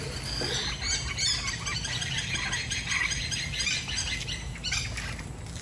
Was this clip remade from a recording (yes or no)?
no